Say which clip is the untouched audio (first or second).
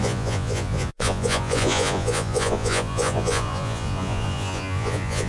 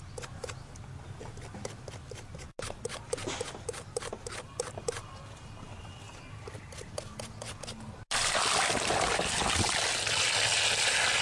second